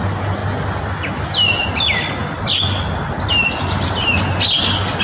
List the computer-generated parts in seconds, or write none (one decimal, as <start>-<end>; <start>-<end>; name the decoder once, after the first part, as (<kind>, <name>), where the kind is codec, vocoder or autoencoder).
none